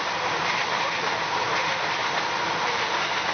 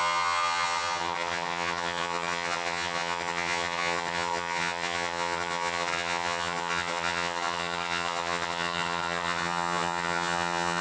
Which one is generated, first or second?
second